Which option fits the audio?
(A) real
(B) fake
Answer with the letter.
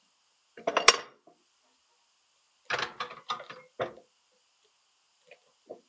A